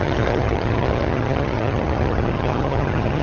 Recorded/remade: remade